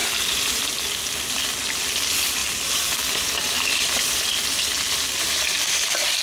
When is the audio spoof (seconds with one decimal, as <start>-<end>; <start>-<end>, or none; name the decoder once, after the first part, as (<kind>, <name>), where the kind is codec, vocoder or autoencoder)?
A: none